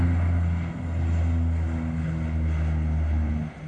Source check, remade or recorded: recorded